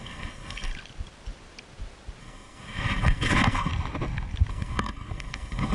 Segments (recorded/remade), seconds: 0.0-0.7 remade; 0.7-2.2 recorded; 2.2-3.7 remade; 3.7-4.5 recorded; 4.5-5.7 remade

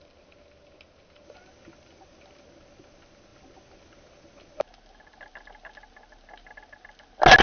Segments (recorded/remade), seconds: 0.0-7.4 recorded

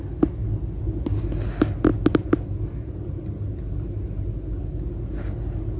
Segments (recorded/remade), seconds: 0.0-5.8 recorded

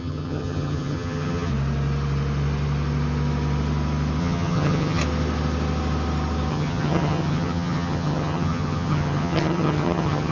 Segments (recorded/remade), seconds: 0.0-1.5 remade; 1.5-4.2 recorded; 4.2-5.0 remade; 5.0-6.5 recorded; 6.5-10.3 remade